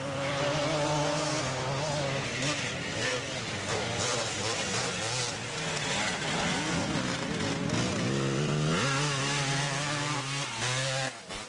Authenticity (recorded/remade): recorded